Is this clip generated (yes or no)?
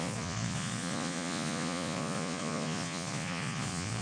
yes